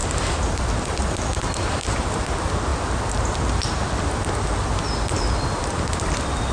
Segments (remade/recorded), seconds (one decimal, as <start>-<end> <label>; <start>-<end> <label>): 0.0-6.5 recorded